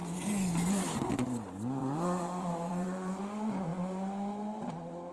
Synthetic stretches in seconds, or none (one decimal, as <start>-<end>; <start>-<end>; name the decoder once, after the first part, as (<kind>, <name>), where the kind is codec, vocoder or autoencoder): 1.8-3.2 (vocoder, Vocos)